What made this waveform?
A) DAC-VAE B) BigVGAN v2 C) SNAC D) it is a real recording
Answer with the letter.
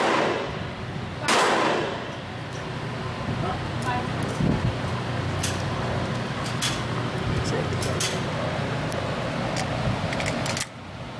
D